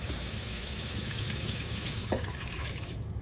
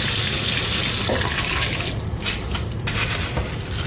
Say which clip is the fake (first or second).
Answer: first